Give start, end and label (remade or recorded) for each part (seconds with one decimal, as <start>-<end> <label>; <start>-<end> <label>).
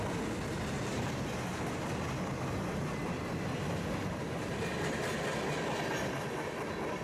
0.0-7.0 recorded